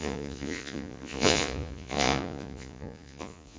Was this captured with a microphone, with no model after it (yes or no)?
no